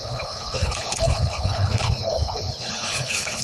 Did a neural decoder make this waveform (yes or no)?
yes